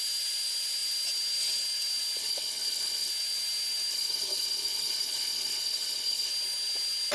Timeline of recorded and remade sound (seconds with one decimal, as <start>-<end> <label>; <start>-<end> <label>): 0.0-2.2 recorded; 2.2-3.1 remade; 3.1-3.9 recorded; 3.9-6.3 remade; 6.3-7.1 recorded